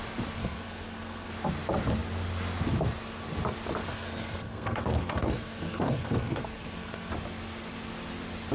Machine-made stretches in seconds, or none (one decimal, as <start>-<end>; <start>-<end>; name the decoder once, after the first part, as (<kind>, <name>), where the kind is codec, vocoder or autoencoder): 0.4-1.3 (codec, SNAC); 3.8-7.1